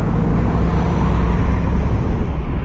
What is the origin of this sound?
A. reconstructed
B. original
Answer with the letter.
B